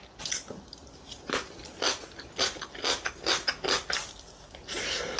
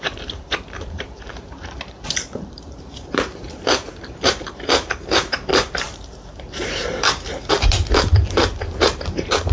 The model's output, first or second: second